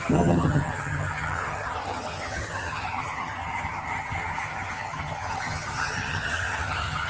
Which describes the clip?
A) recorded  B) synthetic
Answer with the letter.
B